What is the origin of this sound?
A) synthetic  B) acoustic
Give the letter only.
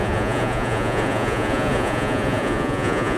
A